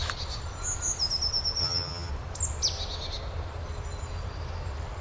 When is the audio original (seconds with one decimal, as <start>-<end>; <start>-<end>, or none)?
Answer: 0.0-1.6; 2.1-5.0